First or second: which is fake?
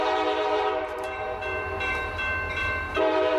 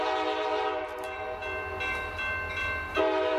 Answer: first